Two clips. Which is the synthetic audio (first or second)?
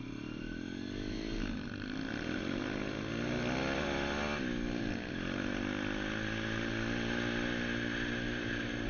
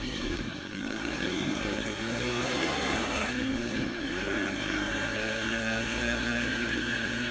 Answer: second